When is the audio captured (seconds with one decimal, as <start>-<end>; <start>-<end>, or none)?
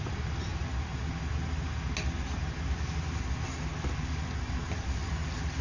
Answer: 0.0-5.6